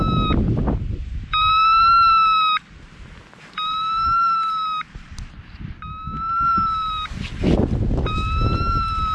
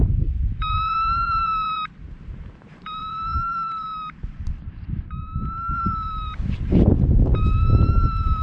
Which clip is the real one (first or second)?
first